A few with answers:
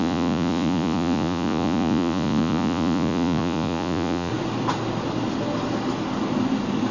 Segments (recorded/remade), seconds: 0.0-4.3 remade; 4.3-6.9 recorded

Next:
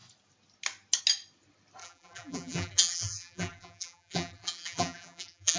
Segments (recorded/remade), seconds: 0.0-1.8 recorded; 1.8-5.6 remade

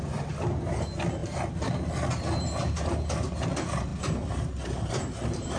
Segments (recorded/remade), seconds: 0.0-5.6 recorded

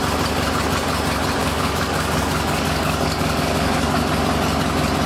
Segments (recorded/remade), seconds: 0.0-1.4 recorded; 1.4-4.0 remade; 4.0-5.1 recorded

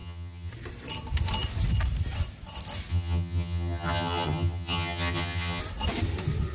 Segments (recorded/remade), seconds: 0.0-0.5 remade; 0.5-2.9 recorded; 2.9-5.6 remade; 5.6-6.5 recorded